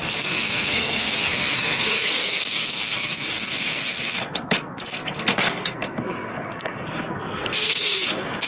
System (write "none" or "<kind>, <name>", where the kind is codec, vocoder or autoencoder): codec, SNAC